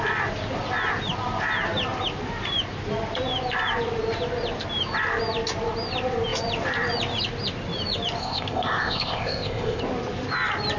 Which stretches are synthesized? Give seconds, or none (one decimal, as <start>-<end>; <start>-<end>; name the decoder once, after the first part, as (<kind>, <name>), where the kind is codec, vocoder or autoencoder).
8.2-9.8 (codec, ZipCodec)